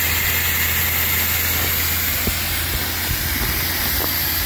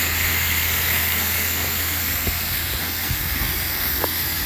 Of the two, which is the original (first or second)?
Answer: first